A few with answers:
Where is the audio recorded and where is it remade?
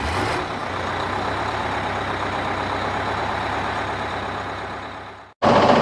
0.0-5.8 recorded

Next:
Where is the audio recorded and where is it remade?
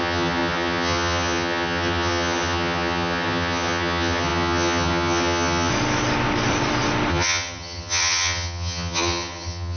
0.0-5.7 remade; 5.7-7.1 recorded; 7.1-9.8 remade